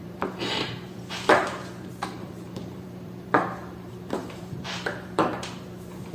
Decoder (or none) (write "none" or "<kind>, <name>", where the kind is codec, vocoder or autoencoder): vocoder, BigVGAN v2